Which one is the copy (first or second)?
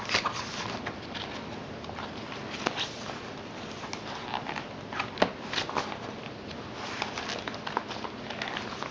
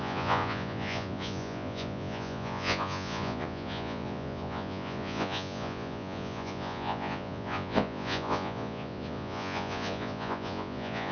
second